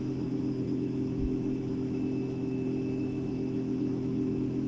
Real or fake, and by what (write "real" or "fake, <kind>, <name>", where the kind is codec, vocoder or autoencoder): fake, autoencoder, DAC-VAE